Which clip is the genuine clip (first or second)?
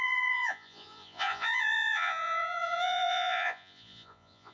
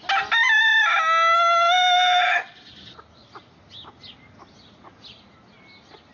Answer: second